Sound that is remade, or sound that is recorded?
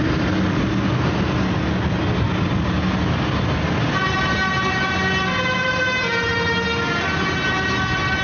recorded